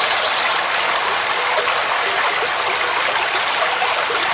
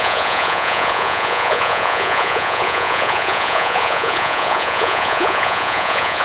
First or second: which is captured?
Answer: first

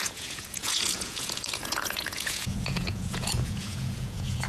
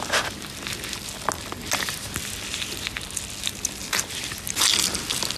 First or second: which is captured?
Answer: second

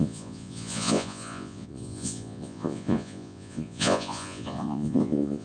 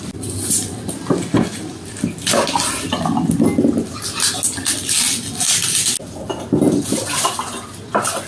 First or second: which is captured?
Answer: second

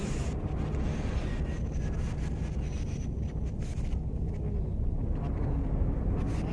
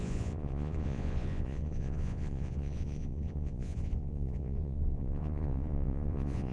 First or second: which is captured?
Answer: first